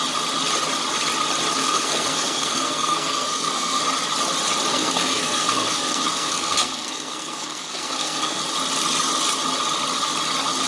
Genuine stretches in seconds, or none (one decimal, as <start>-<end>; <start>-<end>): 0.0-1.6; 3.8-4.7; 8.4-10.7